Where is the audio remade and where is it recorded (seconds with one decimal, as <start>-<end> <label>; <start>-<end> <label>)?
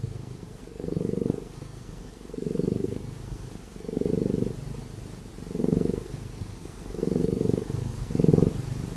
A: 0.0-4.1 remade; 4.1-5.6 recorded; 5.6-8.3 remade; 8.3-9.0 recorded